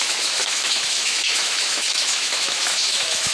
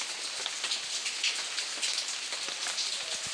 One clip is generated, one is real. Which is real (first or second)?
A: second